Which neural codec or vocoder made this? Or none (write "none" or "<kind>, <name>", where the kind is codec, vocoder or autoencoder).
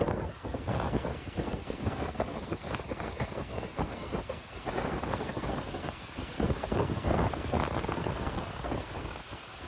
codec, SNAC